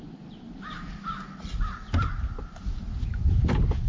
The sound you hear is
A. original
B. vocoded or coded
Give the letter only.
A